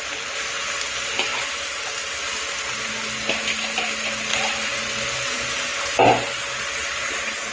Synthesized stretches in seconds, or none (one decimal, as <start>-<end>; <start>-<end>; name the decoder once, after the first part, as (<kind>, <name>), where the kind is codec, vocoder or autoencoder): none